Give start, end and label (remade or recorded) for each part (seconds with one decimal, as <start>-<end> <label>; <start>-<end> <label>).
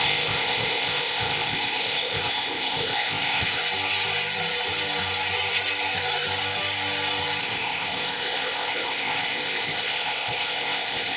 0.0-3.6 remade; 3.6-7.4 recorded; 7.4-11.2 remade